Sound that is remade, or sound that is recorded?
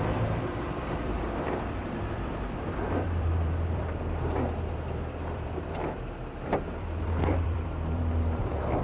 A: remade